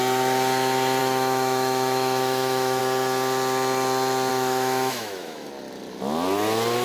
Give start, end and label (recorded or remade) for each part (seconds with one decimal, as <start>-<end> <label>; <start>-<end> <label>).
0.0-1.0 recorded; 1.0-2.8 remade; 2.8-4.3 recorded; 4.3-5.5 remade; 5.5-6.8 recorded